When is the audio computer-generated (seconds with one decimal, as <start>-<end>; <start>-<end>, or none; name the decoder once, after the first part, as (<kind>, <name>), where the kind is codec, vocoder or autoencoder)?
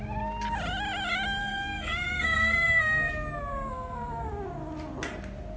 1.4-3.1 (codec, SNAC); 3.5-4.3